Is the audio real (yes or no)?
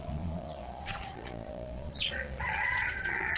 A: no